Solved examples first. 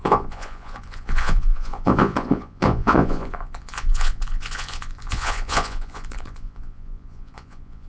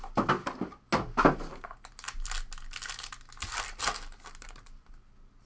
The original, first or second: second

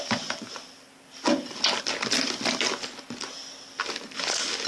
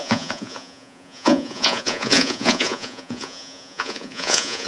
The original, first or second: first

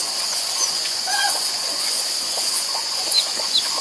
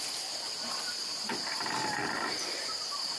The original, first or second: second